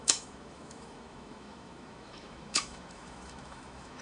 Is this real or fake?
fake